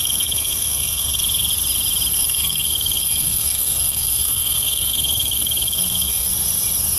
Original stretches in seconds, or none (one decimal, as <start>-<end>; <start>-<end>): 1.2-2.1; 6.3-7.0